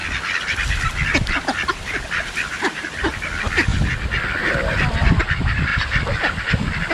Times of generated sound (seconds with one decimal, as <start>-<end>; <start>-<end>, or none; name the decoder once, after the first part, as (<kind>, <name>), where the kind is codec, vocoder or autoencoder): 1.4-3.7 (vocoder, BigVGAN v2); 4.8-6.9